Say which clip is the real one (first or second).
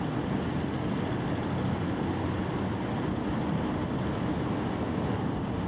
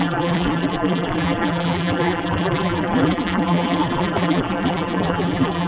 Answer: first